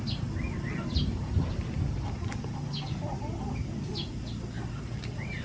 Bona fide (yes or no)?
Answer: yes